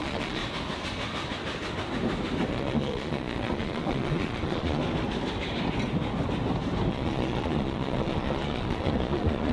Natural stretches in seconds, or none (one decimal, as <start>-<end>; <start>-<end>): 0.4-2.5; 4.8-6.9